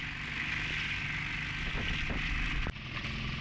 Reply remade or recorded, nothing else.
recorded